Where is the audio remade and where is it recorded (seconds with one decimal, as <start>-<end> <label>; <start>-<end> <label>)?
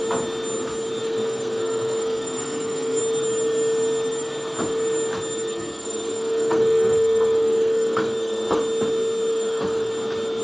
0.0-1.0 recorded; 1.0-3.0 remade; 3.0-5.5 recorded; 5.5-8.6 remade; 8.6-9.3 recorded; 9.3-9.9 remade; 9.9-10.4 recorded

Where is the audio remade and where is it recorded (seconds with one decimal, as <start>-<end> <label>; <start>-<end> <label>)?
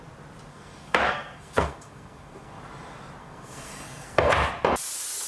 0.0-0.5 recorded; 0.5-2.6 remade; 2.6-3.2 recorded; 3.2-4.3 remade; 4.3-5.3 recorded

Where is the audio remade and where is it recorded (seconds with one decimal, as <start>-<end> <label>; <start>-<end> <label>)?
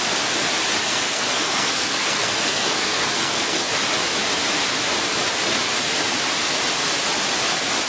0.0-0.8 recorded; 0.8-3.7 remade; 3.7-7.9 recorded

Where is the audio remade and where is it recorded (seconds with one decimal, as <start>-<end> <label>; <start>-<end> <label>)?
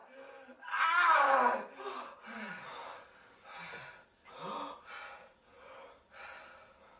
0.0-7.0 recorded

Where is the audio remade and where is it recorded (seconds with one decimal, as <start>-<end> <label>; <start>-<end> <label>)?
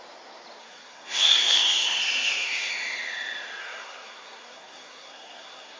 0.0-0.6 recorded; 0.6-2.7 remade; 2.7-3.6 recorded; 3.6-5.8 remade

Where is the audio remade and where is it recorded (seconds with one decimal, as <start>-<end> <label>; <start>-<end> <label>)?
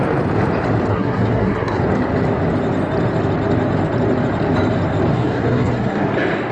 0.0-0.9 recorded; 0.9-1.8 remade; 1.8-5.1 recorded; 5.1-6.1 remade; 6.1-6.5 recorded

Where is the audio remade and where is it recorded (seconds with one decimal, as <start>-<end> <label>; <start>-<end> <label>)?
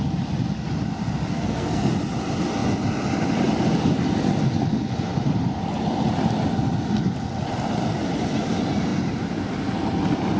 0.0-1.3 recorded; 1.3-1.9 remade; 1.9-10.4 recorded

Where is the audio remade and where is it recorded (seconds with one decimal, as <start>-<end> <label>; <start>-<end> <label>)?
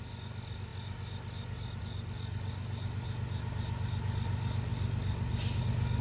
0.0-6.0 recorded